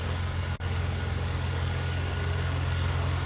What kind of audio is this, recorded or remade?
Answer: remade